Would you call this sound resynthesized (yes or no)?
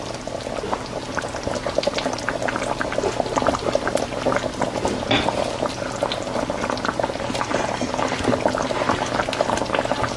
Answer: no